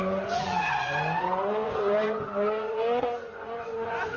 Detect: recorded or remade remade